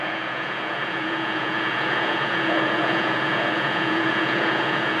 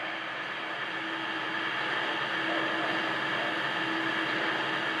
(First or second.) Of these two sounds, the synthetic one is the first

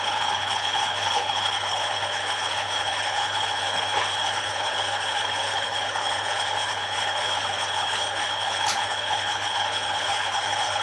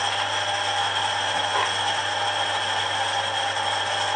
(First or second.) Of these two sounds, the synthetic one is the first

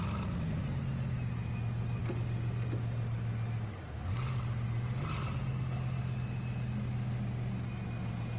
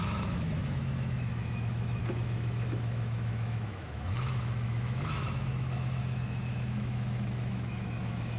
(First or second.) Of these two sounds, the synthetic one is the second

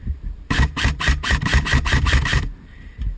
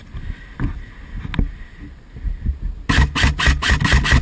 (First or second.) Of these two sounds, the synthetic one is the first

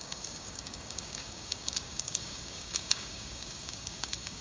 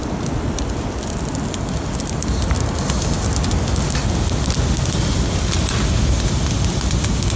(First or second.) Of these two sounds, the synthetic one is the first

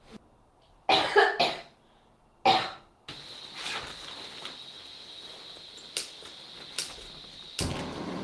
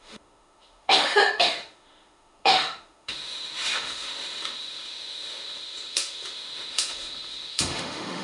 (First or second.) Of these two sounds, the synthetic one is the second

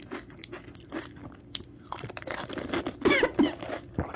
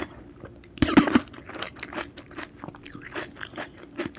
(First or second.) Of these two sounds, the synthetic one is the first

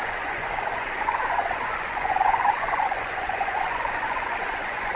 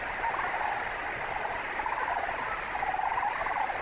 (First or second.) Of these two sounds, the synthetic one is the first